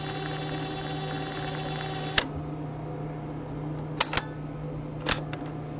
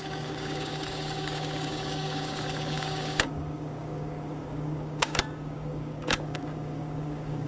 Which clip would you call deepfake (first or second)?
second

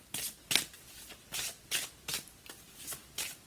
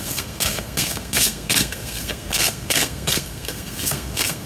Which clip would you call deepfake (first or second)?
second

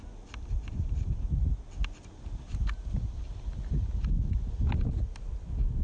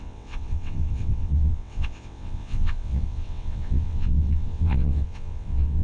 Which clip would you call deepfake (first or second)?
second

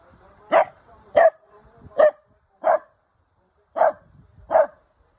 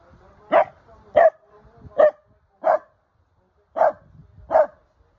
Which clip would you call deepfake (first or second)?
first